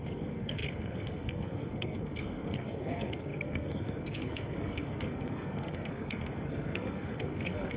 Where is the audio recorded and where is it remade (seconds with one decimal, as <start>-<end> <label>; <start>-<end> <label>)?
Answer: 0.0-7.8 remade